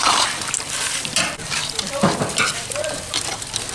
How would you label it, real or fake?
fake